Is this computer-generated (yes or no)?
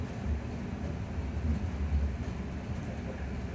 no